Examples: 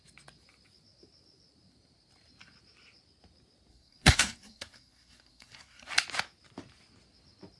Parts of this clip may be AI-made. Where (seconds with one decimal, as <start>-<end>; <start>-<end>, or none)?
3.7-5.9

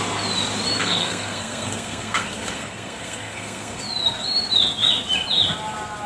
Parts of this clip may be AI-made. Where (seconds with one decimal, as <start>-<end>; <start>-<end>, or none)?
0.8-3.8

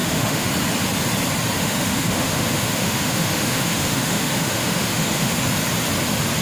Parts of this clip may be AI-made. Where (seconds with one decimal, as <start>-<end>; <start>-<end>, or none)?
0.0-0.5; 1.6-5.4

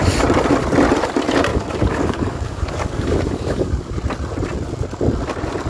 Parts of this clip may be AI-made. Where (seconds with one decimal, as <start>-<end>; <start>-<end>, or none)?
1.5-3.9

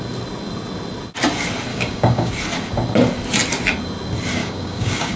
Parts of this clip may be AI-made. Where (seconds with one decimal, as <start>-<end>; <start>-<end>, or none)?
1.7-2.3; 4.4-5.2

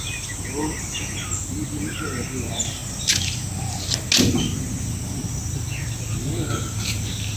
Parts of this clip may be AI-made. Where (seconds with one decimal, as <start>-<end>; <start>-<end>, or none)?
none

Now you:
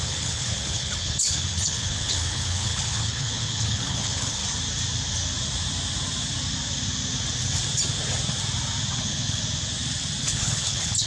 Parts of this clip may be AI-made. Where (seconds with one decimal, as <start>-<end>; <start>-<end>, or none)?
0.0-4.4; 9.0-9.4; 10.2-11.1

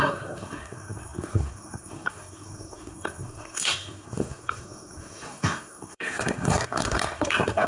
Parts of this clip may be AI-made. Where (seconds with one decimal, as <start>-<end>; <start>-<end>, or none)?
0.0-7.7